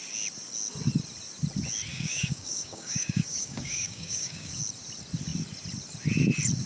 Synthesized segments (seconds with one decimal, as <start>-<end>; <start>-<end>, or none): 1.9-4.6